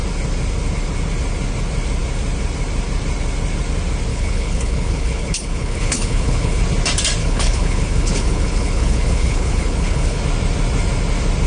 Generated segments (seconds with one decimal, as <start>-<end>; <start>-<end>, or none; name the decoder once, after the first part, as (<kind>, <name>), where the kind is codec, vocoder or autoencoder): 4.1-6.6 (codec, HILCodec); 7.2-10.2